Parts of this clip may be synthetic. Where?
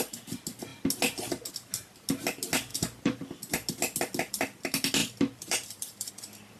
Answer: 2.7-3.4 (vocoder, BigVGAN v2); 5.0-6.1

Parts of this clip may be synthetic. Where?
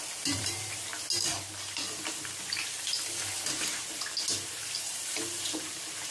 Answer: 0.0-0.9 (vocoder, BigVGAN v2); 4.6-6.1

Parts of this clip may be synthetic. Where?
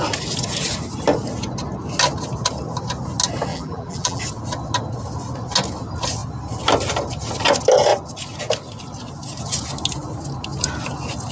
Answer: 3.5-4.2 (vocoder, BigVGAN v2)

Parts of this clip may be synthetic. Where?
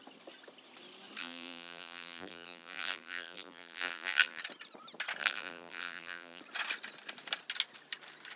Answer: 1.2-4.4 (vocoder, BigVGAN v2); 5.2-6.4